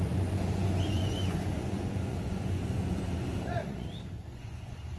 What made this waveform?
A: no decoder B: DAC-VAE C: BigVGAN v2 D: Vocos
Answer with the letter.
D